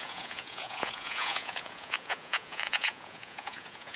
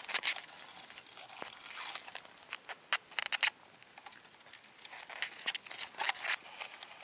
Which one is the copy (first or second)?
first